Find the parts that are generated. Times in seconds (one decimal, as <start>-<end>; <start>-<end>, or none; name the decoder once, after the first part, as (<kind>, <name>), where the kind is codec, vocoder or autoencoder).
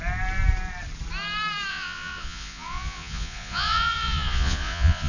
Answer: 1.7-5.1 (vocoder, Vocos)